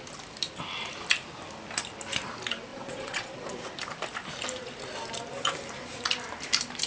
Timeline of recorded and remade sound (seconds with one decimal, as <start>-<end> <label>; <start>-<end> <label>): 0.0-2.7 recorded; 2.7-3.5 remade; 3.5-6.9 recorded

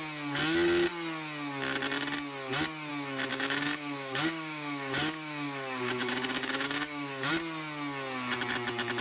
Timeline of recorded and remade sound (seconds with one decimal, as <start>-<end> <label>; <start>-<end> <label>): 0.0-3.3 recorded; 3.3-7.3 remade; 7.3-9.0 recorded

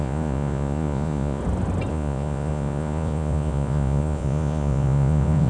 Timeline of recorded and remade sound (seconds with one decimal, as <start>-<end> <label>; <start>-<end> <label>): 0.0-1.4 remade; 1.4-1.9 recorded; 1.9-5.5 remade